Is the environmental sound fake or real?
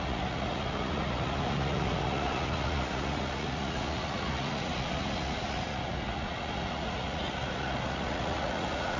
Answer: fake